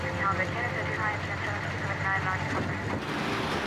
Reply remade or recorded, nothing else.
recorded